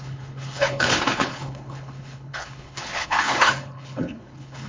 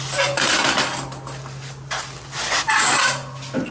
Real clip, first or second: second